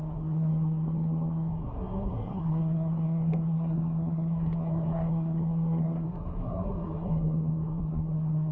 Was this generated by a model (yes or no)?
yes